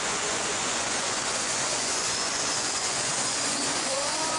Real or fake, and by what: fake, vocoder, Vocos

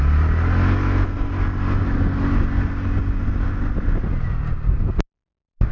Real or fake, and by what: real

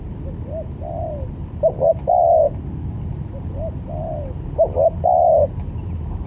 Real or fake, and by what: real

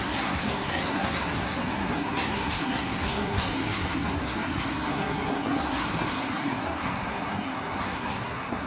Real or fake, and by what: fake, codec, SNAC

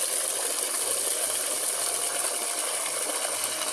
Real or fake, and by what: real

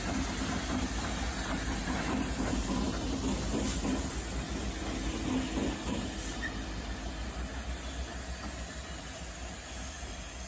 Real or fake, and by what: real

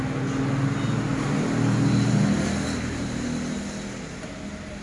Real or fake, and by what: real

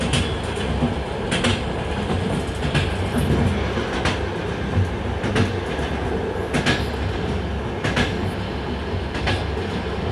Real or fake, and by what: real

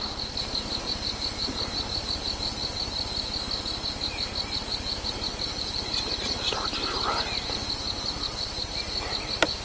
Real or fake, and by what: real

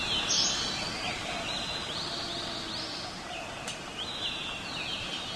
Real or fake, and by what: real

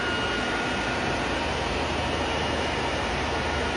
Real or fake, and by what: real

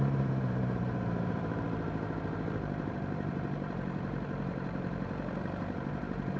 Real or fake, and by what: fake, vocoder, BigVGAN v2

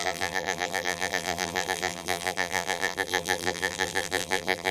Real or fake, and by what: fake, vocoder, BigVGAN v2